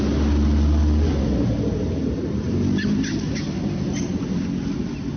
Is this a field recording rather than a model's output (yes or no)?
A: yes